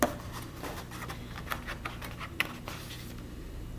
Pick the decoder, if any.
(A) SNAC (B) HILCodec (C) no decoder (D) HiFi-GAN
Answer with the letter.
C